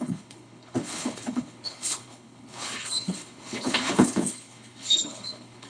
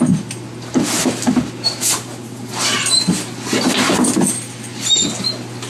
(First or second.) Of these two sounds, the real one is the second